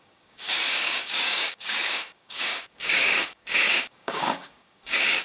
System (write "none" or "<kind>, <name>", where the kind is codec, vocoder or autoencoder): codec, DAC